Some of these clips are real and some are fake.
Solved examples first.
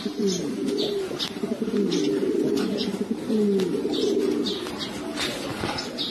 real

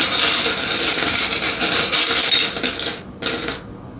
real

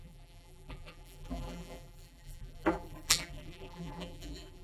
fake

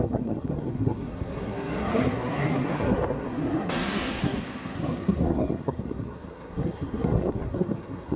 fake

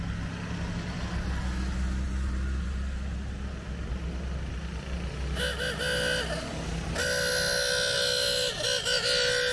real